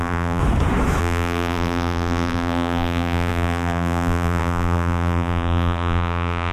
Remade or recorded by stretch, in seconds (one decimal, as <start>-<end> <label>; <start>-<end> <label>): 0.0-0.4 remade; 0.4-1.0 recorded; 1.0-6.5 remade